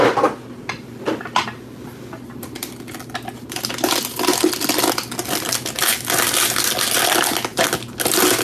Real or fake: real